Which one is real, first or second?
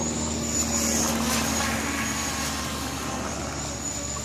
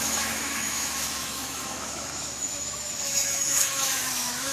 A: first